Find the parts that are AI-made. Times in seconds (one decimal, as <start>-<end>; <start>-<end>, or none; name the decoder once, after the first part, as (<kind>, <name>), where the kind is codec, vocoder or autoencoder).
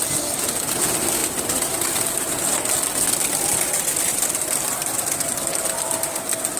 none